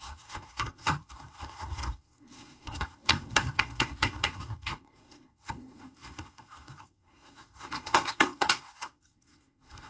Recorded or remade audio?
remade